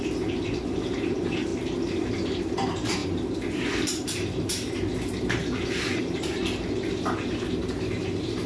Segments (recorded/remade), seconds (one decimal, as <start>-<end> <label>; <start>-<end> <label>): 0.0-1.5 remade; 1.5-2.4 recorded; 2.4-6.4 remade; 6.4-7.3 recorded; 7.3-8.5 remade